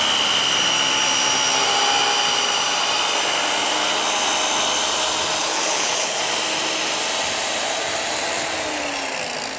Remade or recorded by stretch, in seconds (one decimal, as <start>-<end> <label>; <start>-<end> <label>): 0.0-5.4 recorded; 5.4-6.2 remade; 6.2-9.6 recorded